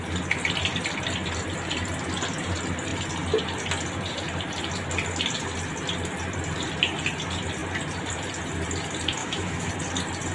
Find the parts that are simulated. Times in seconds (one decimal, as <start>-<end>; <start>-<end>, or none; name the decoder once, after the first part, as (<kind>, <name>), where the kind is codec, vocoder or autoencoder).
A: 9.2-9.7 (autoencoder, DAC-VAE)